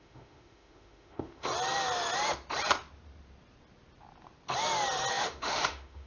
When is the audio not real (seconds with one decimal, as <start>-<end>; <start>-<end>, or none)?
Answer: 0.0-1.5; 5.1-6.1